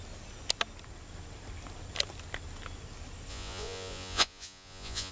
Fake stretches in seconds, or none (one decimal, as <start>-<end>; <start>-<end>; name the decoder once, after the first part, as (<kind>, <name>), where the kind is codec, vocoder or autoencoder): 3.3-5.1 (vocoder, Vocos)